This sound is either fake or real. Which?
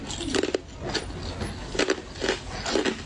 real